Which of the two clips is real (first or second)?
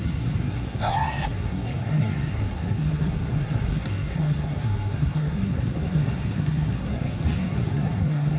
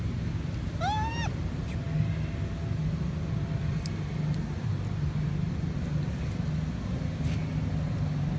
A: second